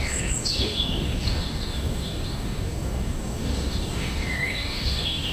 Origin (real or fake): fake